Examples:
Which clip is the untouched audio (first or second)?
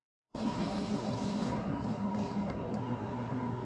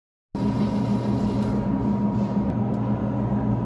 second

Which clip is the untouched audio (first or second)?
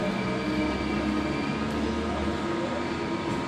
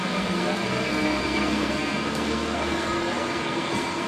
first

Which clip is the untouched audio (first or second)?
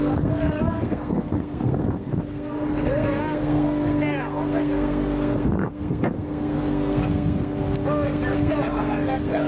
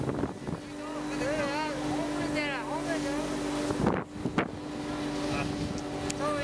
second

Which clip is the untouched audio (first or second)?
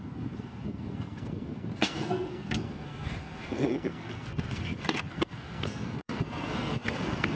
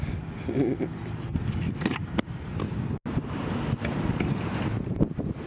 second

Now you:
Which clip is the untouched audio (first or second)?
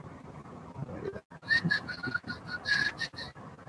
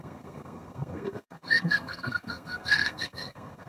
first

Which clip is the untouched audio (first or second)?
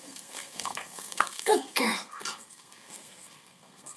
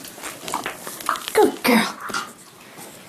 second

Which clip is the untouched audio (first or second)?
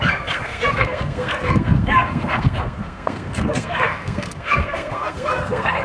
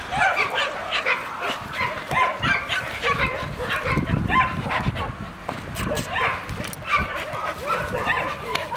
second